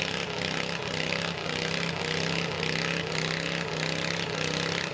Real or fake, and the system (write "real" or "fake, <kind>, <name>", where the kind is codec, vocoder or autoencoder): real